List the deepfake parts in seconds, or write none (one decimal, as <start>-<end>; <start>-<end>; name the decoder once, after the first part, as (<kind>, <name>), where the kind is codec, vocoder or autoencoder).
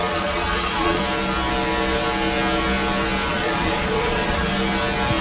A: 0.0-1.0 (vocoder, Vocos); 3.3-4.5